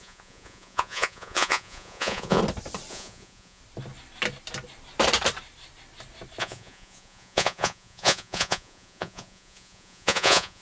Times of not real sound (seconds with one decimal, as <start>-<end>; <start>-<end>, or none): 0.0-2.4; 2.9-3.6; 6.4-10.6